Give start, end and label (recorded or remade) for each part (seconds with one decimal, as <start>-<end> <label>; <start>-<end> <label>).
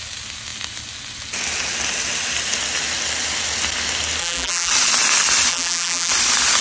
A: 0.0-4.2 recorded; 4.2-4.7 remade; 4.7-5.5 recorded; 5.5-6.1 remade; 6.1-6.6 recorded